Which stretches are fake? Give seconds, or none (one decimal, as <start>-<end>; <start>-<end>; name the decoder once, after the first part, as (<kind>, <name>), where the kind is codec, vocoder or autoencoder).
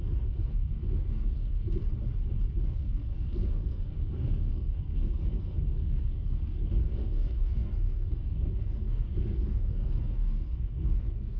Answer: 0.0-1.8 (codec, SNAC); 2.6-11.4